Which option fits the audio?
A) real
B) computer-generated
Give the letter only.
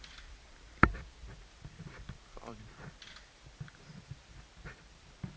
B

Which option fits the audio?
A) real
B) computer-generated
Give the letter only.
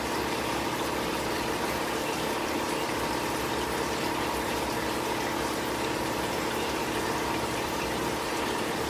B